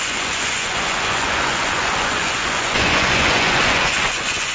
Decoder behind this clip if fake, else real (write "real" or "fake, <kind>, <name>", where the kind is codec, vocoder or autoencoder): fake, vocoder, Vocos